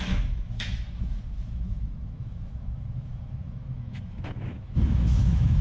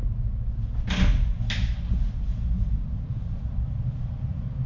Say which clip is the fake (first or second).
first